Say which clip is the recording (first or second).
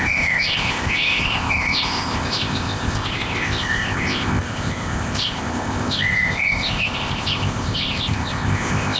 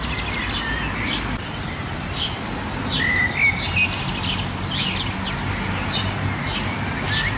second